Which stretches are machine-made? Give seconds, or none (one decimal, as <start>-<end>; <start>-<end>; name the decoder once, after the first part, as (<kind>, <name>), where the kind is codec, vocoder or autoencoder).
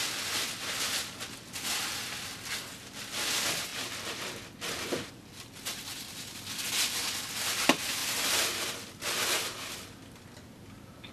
none